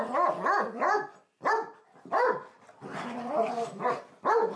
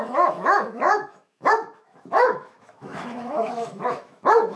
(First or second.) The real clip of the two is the first